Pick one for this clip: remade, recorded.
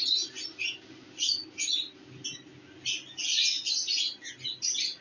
recorded